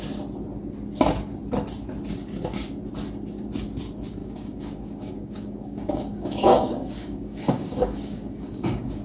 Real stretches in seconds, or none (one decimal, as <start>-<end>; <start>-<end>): 0.0-4.2